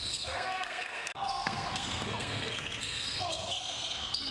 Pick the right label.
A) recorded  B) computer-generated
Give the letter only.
B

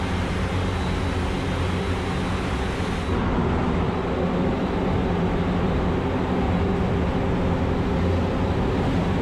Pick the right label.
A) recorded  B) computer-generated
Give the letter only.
A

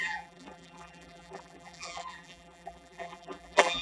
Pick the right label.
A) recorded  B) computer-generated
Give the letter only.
B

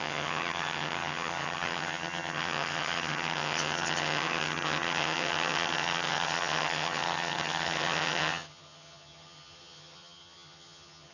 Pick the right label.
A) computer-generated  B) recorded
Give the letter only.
A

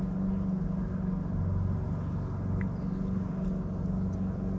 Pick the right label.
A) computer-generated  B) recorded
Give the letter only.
B